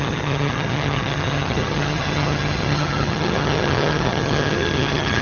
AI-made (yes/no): yes